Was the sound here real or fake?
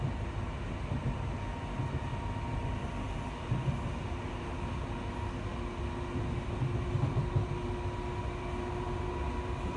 real